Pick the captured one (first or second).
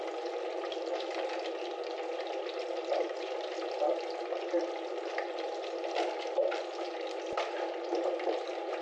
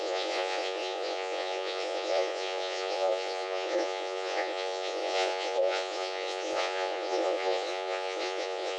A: first